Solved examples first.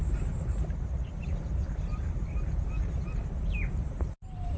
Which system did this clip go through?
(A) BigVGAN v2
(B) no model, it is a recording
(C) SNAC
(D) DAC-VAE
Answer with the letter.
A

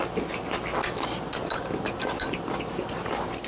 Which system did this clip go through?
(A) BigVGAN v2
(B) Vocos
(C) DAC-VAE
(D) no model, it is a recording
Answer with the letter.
D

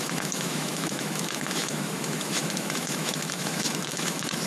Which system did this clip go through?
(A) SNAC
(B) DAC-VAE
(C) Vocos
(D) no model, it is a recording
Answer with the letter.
B